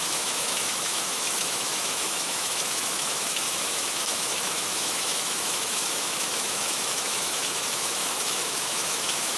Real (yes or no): no